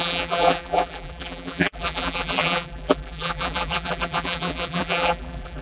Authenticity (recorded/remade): remade